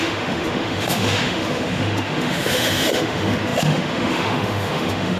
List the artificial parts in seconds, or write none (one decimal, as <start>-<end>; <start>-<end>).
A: 0.0-5.2